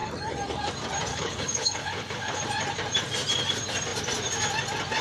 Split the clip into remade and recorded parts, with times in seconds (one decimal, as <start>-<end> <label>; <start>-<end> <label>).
0.0-1.1 recorded; 1.1-2.4 remade; 2.4-5.0 recorded